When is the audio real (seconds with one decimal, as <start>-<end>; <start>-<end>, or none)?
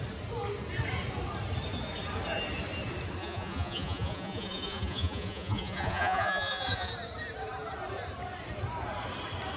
0.0-3.2; 6.9-9.6